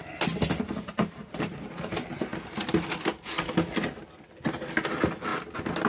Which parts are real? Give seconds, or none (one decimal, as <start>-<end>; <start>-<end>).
0.0-5.9